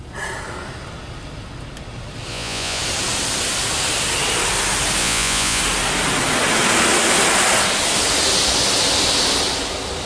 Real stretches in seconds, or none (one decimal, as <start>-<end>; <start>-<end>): 0.0-2.3; 2.8-5.0; 5.6-10.1